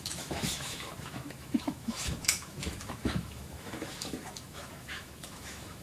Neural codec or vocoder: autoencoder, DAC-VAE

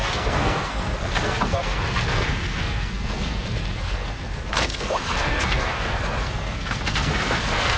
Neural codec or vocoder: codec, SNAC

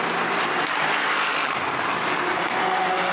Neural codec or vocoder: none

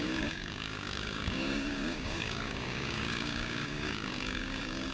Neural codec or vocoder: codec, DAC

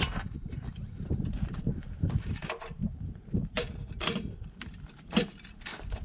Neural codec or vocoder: vocoder, BigVGAN v2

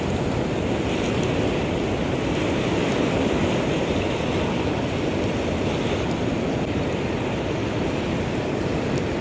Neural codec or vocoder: none